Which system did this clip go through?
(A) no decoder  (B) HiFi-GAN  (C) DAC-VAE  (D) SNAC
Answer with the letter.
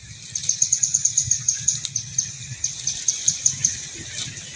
A